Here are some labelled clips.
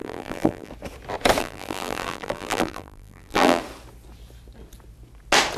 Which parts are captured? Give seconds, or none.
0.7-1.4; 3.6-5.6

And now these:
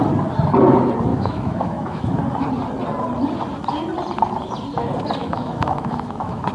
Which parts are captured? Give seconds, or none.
0.0-1.1; 2.2-5.2

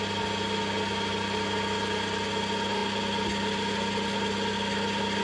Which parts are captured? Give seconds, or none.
0.0-5.2

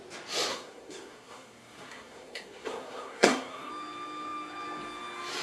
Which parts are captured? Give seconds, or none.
0.0-0.5; 3.7-5.4

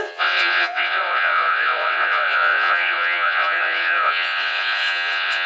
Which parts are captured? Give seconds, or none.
none

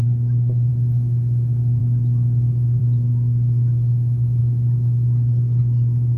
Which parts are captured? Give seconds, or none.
0.7-6.2

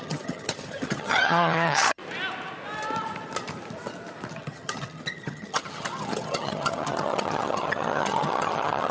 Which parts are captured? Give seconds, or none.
2.0-4.3